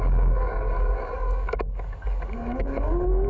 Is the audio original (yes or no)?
no